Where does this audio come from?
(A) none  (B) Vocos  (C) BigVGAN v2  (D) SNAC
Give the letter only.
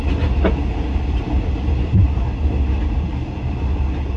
A